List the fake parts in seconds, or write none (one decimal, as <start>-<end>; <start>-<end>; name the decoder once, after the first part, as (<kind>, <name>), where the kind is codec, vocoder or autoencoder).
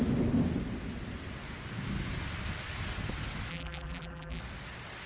3.5-4.4 (vocoder, BigVGAN v2)